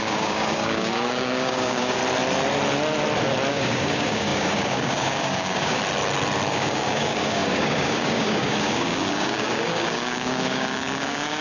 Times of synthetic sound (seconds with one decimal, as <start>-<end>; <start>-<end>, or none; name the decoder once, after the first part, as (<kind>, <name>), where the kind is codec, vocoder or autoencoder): 0.0-2.0 (codec, DAC); 3.5-5.8; 6.5-11.4